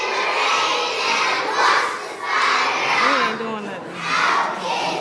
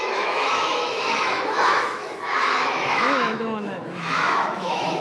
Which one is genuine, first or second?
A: first